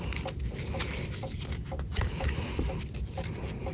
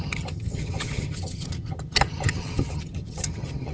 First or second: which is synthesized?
second